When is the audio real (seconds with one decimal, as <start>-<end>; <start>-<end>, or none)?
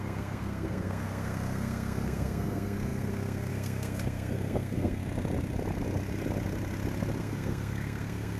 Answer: 5.0-7.2